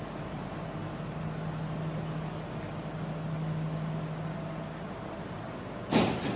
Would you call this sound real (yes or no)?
yes